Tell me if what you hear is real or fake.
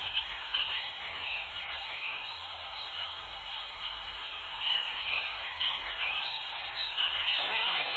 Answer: fake